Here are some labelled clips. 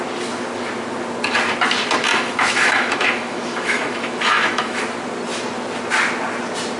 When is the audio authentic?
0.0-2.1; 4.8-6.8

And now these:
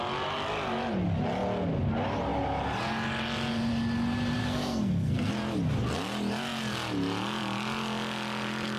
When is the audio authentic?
0.0-4.4; 5.3-8.8

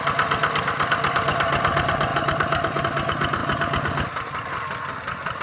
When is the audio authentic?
0.0-2.1; 2.8-5.4

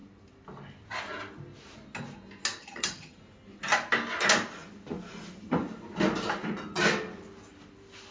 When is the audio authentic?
0.0-2.6; 3.2-8.1